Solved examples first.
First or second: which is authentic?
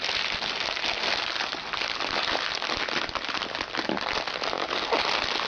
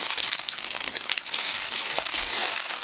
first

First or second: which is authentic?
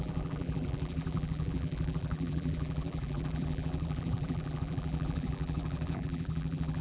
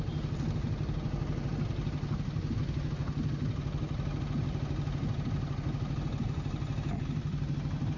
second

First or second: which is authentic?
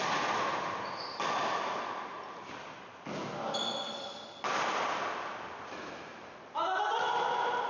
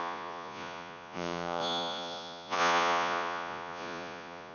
first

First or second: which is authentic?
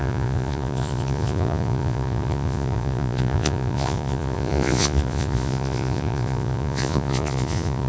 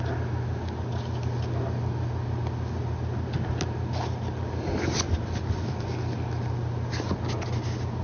second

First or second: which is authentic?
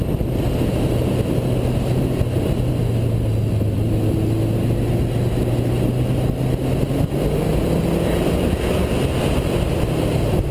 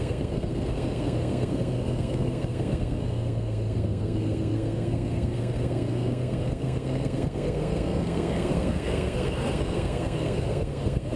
first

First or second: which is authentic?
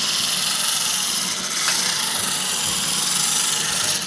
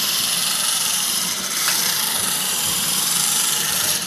first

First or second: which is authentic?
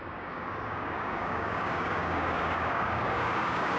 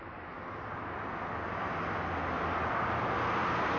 second